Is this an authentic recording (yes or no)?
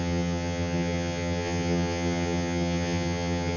no